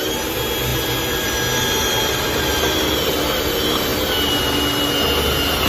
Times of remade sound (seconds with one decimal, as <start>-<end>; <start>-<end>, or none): 0.7-3.2